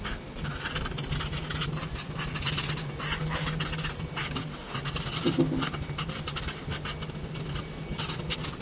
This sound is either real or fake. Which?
real